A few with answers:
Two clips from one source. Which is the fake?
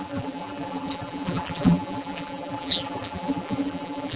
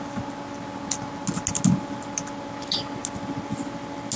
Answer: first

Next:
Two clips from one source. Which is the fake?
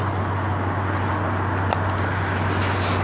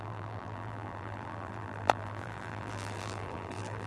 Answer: second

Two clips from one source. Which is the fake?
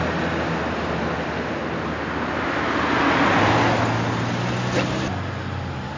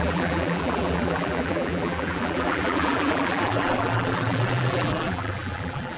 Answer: second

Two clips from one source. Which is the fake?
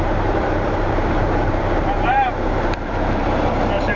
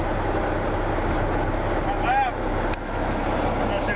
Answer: first